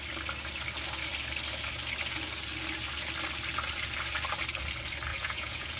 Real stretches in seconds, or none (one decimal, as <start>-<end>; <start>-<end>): 0.0-5.1